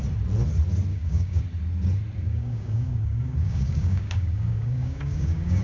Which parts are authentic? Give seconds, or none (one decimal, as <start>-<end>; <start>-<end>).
0.0-0.9; 1.4-2.3

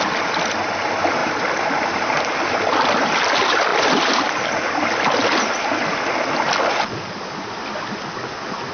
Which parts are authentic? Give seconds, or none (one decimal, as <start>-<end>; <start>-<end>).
0.0-8.7

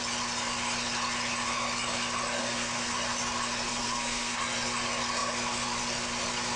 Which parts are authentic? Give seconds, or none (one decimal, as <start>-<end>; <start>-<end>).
0.0-2.4; 2.9-3.7; 4.4-6.6